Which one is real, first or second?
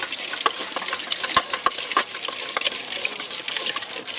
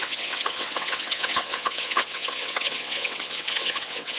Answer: first